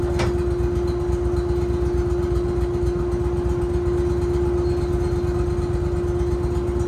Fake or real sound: real